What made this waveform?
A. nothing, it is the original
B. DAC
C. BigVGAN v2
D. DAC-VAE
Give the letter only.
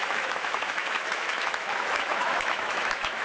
D